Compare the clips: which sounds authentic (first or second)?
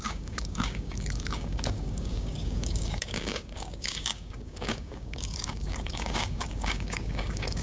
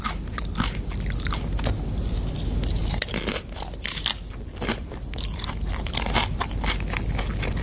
second